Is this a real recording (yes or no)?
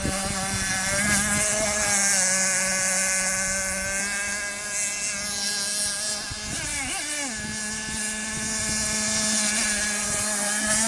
yes